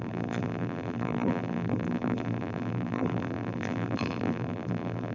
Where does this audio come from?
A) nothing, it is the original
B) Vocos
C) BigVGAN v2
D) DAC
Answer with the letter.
C